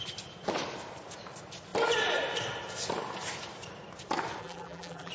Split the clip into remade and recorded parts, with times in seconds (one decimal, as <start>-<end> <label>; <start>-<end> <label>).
0.0-4.4 recorded; 4.4-5.1 remade